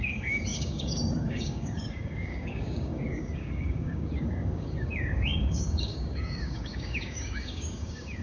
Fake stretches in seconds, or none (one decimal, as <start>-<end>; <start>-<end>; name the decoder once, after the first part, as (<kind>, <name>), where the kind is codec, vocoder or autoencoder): 0.0-8.2 (codec, DAC)